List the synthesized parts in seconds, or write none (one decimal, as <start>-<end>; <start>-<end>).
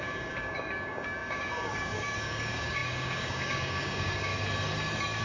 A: 0.0-4.3